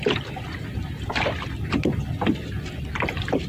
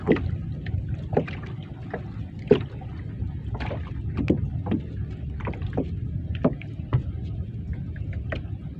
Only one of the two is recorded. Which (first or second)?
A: second